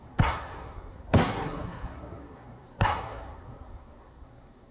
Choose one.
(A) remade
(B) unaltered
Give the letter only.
A